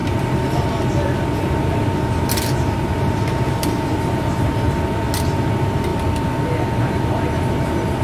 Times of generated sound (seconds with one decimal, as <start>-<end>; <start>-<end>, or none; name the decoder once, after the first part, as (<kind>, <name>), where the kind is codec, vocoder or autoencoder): 0.0-4.0 (vocoder, BigVGAN v2); 5.9-8.0